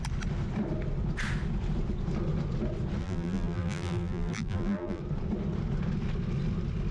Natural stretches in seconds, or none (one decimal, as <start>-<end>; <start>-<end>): 0.0-3.0; 5.0-6.9